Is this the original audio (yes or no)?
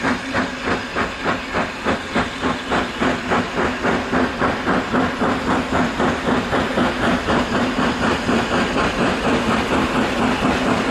yes